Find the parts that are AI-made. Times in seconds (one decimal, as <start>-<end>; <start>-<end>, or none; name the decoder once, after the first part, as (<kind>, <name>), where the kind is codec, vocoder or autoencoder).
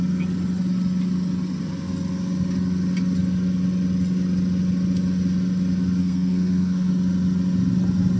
6.0-6.9 (codec, SNAC)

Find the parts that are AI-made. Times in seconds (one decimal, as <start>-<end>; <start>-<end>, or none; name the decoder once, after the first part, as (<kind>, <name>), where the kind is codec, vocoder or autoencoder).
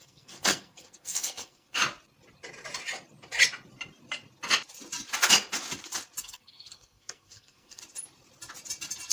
0.0-1.8 (codec, SNAC); 6.2-7.8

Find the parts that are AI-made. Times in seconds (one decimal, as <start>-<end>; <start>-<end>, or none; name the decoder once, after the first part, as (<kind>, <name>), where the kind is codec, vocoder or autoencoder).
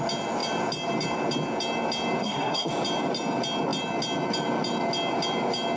2.2-2.7 (codec, SNAC)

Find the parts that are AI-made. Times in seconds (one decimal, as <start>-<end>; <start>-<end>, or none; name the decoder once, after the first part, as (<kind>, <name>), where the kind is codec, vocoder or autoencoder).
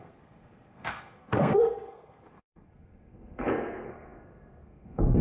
0.0-5.2 (codec, SNAC)